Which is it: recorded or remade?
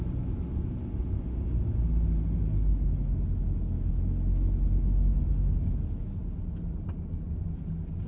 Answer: recorded